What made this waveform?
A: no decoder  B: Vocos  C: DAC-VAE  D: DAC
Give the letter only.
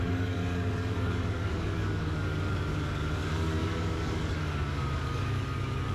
D